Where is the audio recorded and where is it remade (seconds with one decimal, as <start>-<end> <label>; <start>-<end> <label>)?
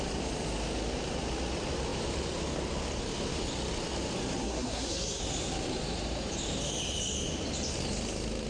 0.0-4.4 recorded; 4.4-5.2 remade; 5.2-8.5 recorded